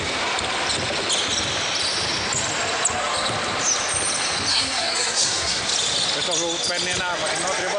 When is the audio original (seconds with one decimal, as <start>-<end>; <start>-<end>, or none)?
0.0-4.5; 5.7-7.8